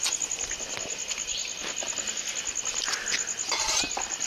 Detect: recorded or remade recorded